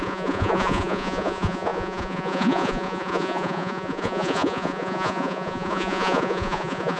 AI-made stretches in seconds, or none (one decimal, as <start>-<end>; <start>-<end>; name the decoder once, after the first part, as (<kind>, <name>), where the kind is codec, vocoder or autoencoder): 0.0-7.0 (vocoder, Vocos)